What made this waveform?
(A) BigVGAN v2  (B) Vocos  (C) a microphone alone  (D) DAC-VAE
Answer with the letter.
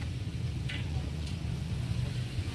B